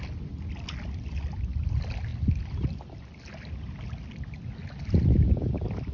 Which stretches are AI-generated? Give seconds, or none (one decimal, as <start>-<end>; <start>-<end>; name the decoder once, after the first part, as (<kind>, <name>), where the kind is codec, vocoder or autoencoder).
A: none